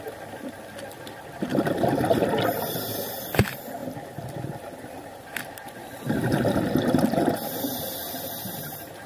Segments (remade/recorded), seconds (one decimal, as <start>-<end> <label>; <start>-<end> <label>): 0.0-9.1 remade